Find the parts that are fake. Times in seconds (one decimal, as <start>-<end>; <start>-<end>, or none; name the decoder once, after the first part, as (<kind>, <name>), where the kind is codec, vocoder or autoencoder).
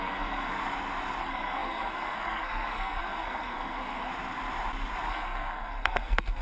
0.0-0.5 (codec, SNAC); 1.2-4.1; 5.1-6.4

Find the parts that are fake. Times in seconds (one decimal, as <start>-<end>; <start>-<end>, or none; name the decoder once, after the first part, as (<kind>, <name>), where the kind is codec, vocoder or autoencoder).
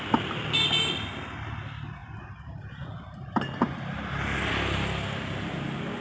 none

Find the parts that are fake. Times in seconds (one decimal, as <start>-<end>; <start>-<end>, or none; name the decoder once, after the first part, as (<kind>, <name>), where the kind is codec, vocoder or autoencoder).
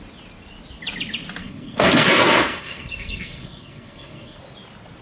1.4-4.4 (codec, SNAC)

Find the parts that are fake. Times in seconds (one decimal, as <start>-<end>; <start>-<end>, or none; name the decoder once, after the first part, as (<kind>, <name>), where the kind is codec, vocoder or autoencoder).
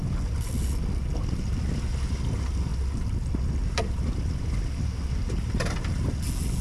none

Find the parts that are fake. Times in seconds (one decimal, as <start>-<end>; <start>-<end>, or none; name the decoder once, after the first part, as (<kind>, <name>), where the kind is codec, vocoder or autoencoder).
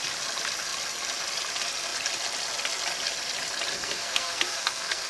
3.7-5.1 (codec, SNAC)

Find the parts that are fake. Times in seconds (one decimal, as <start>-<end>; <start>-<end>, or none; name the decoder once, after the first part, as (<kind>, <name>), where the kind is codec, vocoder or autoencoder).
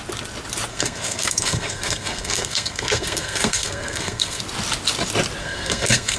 0.7-4.4 (codec, SNAC); 5.4-6.2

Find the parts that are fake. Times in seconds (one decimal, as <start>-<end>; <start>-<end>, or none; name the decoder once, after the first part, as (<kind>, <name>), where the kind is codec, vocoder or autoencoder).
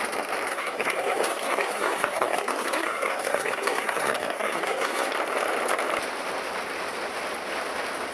0.5-5.1 (codec, SNAC)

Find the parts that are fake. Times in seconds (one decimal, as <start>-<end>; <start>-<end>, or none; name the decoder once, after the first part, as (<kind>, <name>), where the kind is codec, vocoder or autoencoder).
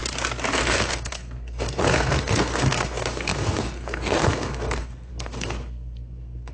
0.5-6.5 (codec, SNAC)